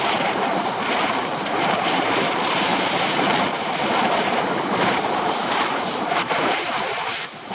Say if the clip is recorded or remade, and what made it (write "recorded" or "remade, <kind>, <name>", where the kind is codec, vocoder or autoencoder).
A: remade, vocoder, BigVGAN v2